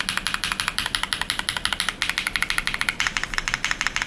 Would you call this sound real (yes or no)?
yes